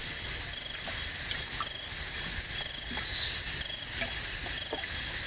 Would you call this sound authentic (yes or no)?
yes